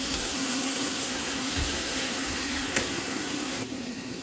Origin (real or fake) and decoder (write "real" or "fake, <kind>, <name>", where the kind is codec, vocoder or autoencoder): fake, codec, SNAC